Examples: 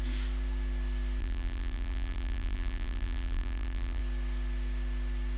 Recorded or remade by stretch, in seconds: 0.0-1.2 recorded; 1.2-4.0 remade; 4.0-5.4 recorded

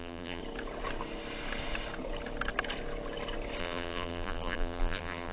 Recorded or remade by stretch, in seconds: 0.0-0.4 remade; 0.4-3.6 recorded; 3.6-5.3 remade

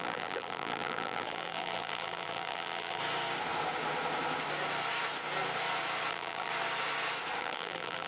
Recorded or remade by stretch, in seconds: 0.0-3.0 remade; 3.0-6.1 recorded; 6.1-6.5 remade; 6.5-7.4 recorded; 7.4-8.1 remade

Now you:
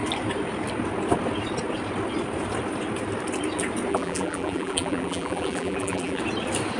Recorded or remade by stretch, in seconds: 0.0-3.9 recorded; 3.9-6.2 remade; 6.2-6.8 recorded

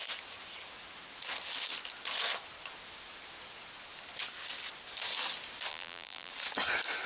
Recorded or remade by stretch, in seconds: 0.0-5.7 recorded; 5.7-6.3 remade; 6.3-7.1 recorded